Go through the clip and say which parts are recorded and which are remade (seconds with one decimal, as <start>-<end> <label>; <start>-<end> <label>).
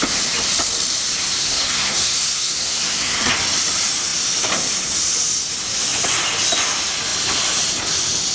0.0-1.4 recorded; 1.4-3.3 remade; 3.3-8.3 recorded